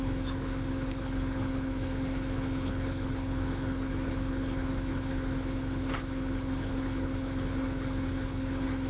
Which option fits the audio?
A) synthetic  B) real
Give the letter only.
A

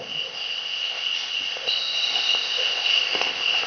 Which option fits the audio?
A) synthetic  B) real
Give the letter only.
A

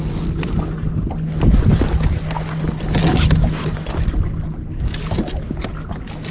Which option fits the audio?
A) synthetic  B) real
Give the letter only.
B